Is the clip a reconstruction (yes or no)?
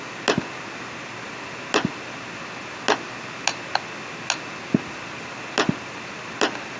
no